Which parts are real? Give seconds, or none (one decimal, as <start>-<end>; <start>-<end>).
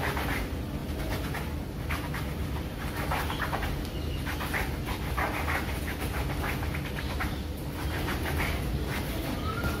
0.0-9.8